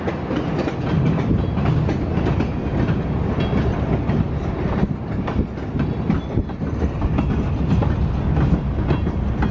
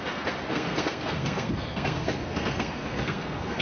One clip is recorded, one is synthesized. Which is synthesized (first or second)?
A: second